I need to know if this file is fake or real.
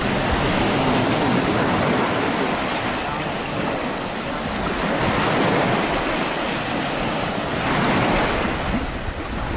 real